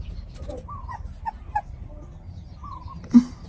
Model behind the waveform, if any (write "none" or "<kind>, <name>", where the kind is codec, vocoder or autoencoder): none